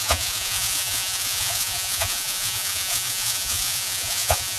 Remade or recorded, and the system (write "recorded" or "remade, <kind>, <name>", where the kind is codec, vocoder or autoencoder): remade, vocoder, Vocos